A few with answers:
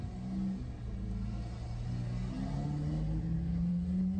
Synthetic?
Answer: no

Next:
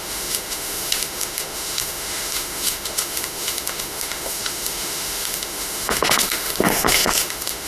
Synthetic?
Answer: yes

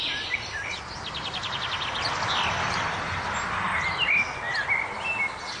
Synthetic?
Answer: no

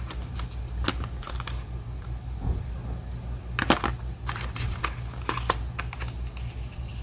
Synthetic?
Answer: no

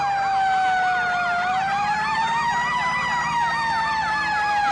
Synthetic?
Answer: no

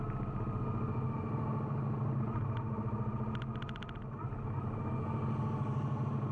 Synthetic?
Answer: no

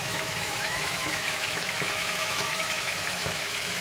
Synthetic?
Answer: yes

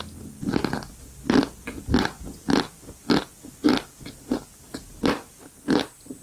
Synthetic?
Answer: no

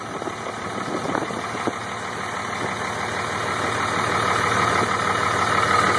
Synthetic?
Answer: no